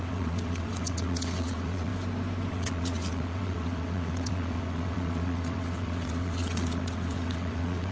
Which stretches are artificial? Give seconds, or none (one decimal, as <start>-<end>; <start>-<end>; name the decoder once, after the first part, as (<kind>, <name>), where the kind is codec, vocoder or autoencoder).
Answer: 0.0-1.9 (vocoder, WaveNeXt); 2.5-7.9